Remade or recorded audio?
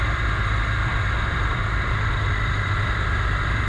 remade